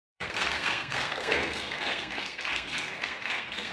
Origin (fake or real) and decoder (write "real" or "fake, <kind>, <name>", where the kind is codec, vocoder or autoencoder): fake, codec, SNAC